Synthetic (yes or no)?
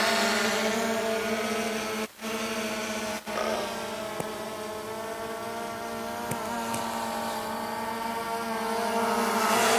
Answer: no